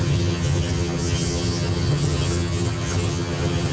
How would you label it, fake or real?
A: fake